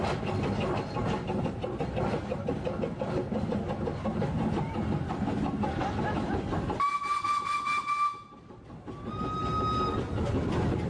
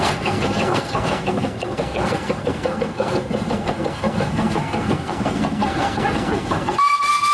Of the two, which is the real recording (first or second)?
first